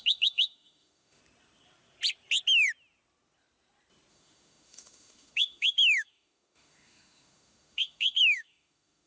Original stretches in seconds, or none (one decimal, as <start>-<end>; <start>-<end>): 1.2-4.1